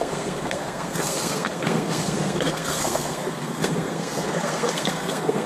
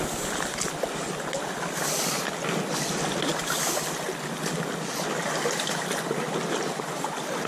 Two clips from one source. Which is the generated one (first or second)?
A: first